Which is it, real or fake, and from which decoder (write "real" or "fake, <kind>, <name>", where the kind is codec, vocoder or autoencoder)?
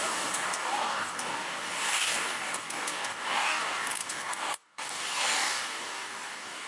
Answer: fake, codec, DAC